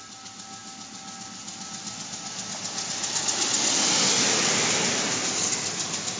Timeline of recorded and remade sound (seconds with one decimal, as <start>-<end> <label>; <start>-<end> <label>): 0.0-6.2 recorded